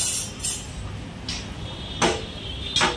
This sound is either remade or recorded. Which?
recorded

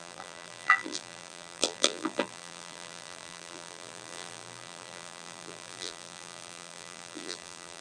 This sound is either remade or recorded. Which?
remade